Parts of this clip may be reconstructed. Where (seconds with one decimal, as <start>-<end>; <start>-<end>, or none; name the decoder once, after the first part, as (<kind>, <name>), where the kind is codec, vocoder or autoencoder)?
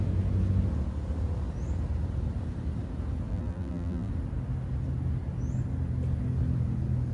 3.3-4.1 (vocoder, BigVGAN v2)